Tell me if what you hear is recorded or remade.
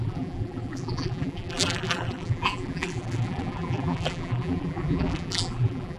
remade